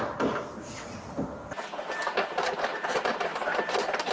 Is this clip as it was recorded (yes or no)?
yes